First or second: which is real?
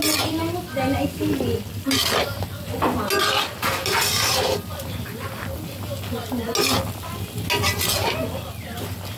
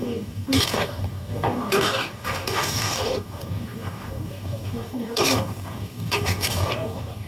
first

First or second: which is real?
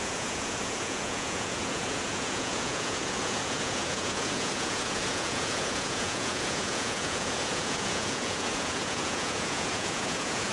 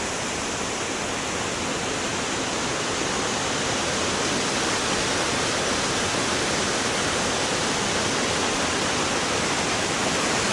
second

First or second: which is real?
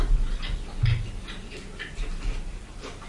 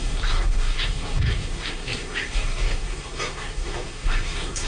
first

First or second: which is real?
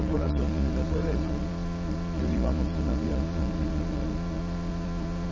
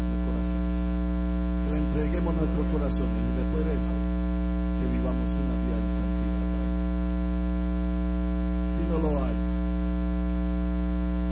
second